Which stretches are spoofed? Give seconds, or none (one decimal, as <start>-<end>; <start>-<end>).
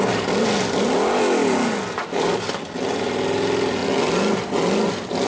2.0-2.5